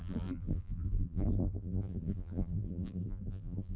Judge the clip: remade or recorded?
remade